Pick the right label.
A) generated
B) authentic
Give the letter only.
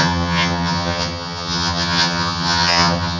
A